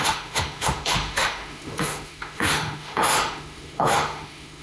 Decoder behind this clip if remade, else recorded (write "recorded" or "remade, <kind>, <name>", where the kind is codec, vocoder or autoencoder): remade, autoencoder, DAC-VAE